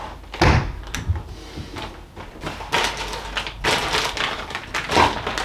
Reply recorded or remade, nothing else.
recorded